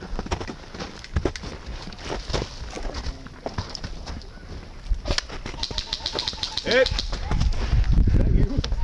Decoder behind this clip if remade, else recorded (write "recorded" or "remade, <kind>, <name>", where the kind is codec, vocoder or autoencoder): recorded